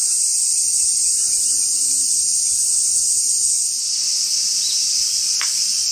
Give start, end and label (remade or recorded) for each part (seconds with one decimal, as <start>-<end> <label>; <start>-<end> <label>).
0.0-1.6 remade; 1.6-5.1 recorded; 5.1-5.9 remade